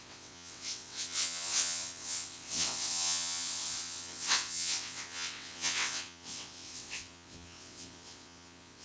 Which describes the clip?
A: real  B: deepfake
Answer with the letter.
B